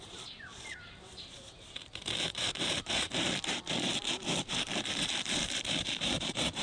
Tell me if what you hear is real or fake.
fake